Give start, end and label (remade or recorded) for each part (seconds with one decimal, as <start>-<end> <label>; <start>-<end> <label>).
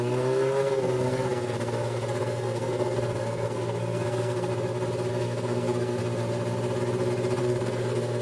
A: 0.0-4.5 remade; 4.5-5.1 recorded; 5.1-6.0 remade; 6.0-7.4 recorded; 7.4-8.2 remade